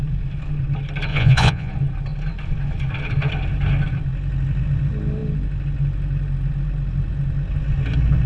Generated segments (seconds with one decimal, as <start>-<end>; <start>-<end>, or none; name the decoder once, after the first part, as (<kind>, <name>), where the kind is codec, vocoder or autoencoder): 1.1-1.7 (vocoder, Vocos)